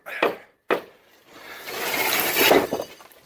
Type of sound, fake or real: fake